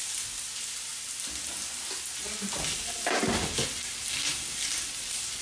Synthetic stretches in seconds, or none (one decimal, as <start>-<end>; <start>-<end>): none